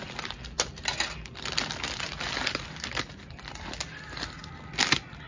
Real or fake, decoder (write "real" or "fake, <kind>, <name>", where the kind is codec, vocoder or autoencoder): real